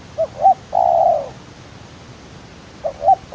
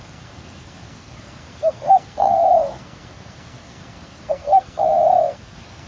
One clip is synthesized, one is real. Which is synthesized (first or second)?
second